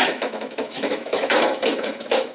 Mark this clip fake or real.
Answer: fake